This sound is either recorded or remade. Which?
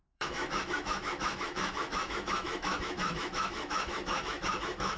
remade